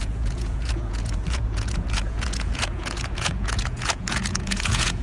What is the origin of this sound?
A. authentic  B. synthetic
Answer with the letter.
B